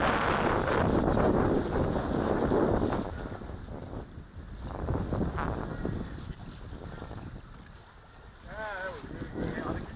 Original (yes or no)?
yes